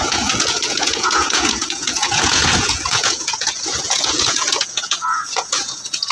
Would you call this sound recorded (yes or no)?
no